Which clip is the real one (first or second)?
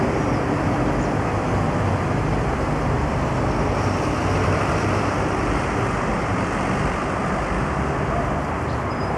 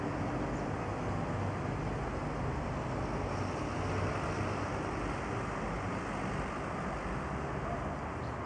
second